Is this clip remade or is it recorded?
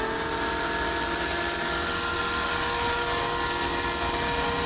recorded